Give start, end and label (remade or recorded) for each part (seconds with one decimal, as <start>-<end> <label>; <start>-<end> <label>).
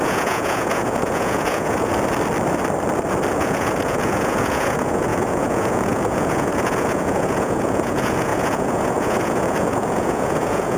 0.0-1.9 remade; 1.9-3.3 recorded; 3.3-10.8 remade